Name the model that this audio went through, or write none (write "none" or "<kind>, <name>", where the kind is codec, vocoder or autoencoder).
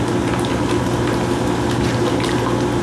none